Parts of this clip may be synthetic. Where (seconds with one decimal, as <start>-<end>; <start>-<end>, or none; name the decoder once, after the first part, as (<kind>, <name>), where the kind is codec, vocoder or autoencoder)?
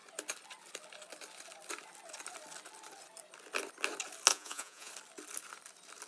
4.3-4.9 (vocoder, Vocos)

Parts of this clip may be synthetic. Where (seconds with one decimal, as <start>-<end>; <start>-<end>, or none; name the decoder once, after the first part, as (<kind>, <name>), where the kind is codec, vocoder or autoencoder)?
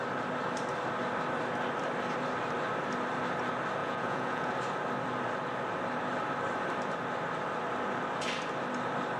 3.8-4.5 (vocoder, Vocos)